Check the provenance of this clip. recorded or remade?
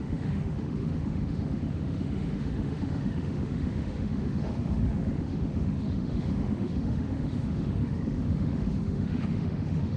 remade